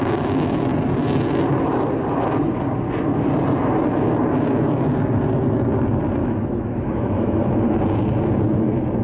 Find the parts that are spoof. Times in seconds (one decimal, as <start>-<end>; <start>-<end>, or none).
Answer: 6.2-7.5